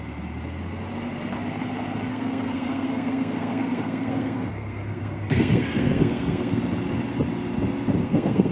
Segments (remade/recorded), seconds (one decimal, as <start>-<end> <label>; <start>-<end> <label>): 0.0-2.1 recorded; 2.1-6.6 remade; 6.6-8.0 recorded; 8.0-8.5 remade